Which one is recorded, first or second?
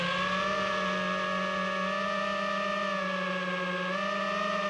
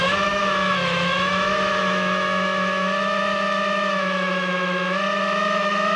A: first